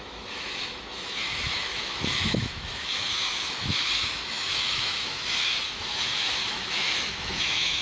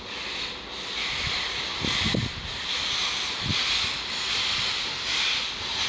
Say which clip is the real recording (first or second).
second